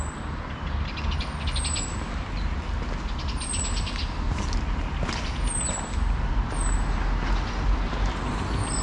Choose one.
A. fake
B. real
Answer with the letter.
B